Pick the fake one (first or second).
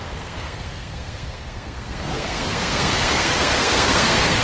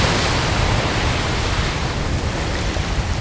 first